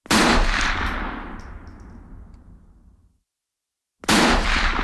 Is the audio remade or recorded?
recorded